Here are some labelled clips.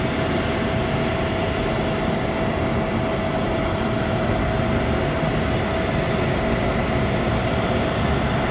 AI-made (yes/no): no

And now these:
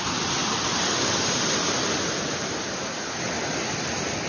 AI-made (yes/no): no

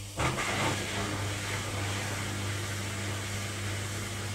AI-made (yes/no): no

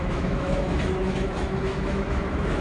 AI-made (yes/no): yes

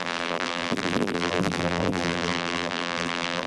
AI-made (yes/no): yes